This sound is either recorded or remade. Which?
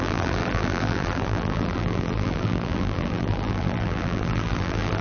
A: remade